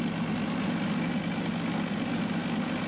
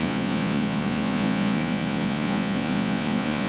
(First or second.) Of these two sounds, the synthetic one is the second